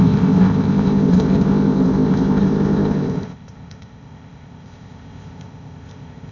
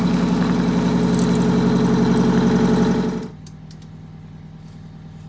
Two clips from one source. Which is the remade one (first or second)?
first